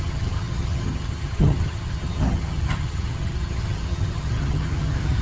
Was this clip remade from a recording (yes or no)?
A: yes